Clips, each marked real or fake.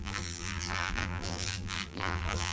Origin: fake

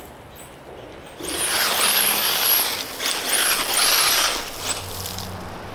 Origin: real